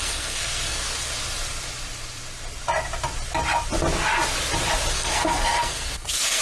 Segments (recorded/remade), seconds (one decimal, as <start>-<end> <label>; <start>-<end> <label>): 0.0-1.1 remade; 1.1-4.9 recorded; 4.9-6.4 remade